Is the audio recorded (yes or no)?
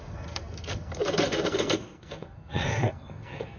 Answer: no